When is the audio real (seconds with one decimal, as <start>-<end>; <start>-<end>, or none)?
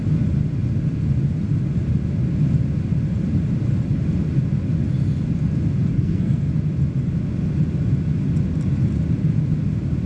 0.0-5.9; 6.5-10.1